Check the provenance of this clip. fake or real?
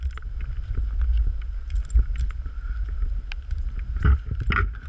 real